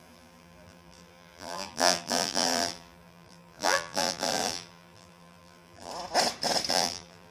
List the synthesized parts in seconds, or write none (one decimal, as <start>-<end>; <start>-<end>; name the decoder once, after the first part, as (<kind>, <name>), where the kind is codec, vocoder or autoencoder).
0.0-5.9 (vocoder, BigVGAN v2); 6.7-7.3